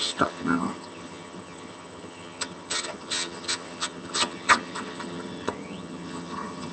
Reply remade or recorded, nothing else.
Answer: remade